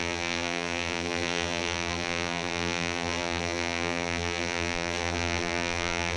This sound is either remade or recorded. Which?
remade